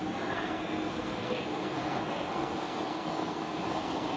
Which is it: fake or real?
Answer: fake